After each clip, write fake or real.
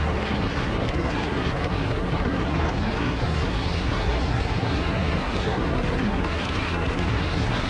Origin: fake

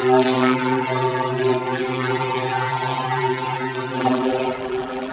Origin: fake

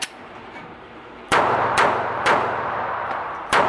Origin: fake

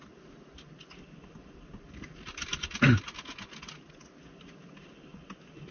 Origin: real